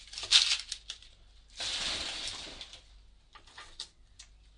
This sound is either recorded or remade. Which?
recorded